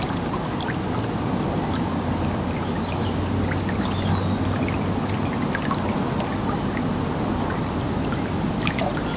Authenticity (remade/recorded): recorded